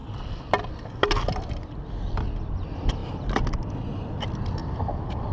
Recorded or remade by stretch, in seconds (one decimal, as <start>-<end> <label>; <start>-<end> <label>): 0.0-4.6 recorded; 4.6-5.3 remade